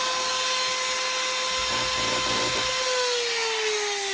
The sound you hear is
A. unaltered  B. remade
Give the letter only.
A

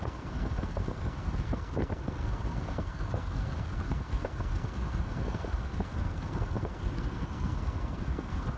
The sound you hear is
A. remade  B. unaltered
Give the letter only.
A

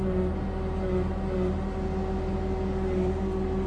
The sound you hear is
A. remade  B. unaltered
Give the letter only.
B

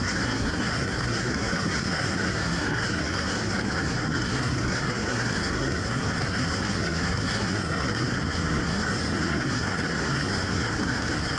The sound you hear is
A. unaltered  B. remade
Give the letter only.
B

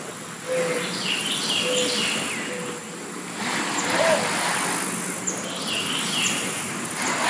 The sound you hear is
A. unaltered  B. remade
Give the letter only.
A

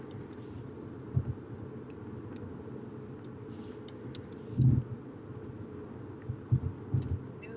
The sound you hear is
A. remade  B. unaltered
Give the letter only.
B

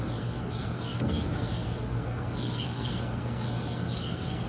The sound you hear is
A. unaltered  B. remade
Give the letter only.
B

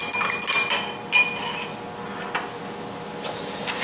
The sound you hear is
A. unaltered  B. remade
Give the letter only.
A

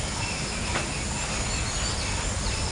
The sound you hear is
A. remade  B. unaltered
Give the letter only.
B